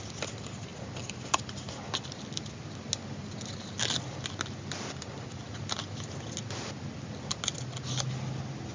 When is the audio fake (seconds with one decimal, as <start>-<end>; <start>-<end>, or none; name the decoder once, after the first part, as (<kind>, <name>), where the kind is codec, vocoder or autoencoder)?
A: none